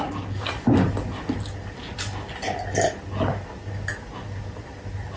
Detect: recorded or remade recorded